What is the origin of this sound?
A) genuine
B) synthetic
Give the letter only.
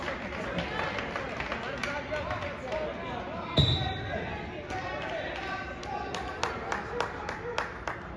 A